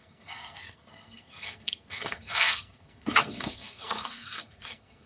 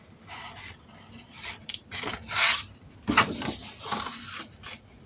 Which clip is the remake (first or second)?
first